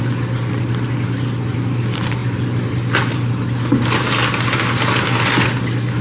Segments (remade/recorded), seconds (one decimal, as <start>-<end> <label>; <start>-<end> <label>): 0.0-6.0 recorded